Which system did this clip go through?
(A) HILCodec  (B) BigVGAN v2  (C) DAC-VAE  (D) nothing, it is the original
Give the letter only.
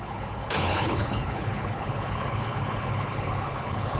A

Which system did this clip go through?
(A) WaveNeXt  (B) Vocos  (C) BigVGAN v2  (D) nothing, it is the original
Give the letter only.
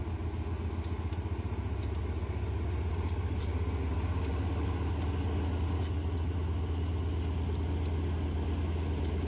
D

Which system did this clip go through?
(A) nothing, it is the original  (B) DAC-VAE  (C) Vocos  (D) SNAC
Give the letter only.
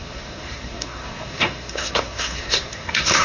D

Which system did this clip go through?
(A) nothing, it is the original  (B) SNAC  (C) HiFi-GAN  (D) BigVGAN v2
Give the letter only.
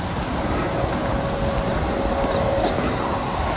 A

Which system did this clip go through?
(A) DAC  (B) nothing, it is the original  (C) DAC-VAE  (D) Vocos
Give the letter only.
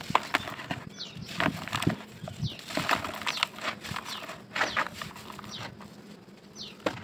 B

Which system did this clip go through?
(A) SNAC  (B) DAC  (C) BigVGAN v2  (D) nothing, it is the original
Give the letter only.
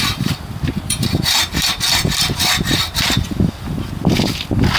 C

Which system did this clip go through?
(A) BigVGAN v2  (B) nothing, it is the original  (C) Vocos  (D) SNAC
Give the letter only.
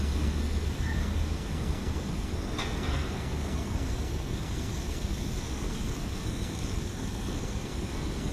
D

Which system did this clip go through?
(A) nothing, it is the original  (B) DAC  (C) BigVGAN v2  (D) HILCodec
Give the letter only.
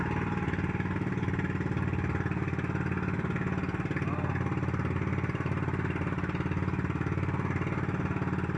A